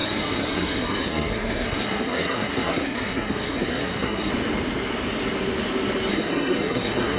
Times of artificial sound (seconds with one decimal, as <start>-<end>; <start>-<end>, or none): 0.0-4.3; 6.1-7.2

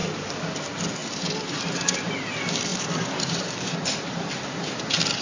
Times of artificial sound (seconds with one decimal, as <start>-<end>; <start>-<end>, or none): 0.0-0.5; 1.0-2.1; 2.7-4.8